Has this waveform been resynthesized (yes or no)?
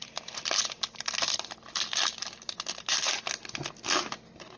no